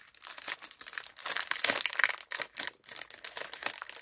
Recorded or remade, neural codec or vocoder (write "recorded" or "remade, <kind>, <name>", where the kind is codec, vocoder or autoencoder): recorded